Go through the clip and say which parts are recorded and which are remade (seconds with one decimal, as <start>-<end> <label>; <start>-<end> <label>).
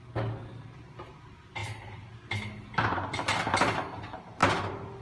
0.0-5.0 recorded